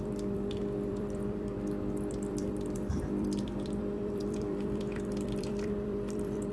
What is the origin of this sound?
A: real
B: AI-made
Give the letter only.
B